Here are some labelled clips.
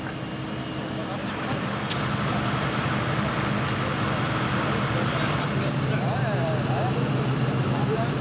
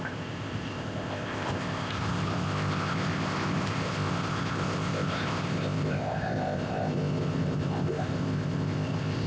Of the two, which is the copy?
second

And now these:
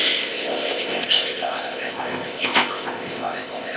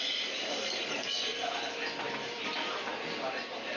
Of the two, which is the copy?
first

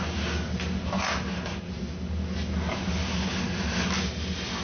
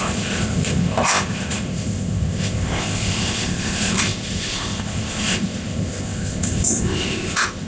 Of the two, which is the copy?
second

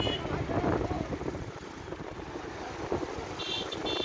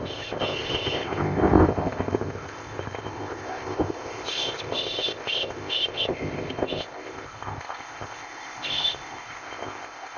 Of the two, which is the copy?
second